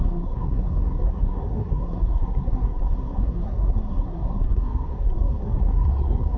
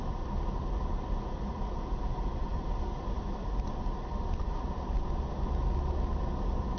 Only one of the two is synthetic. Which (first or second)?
first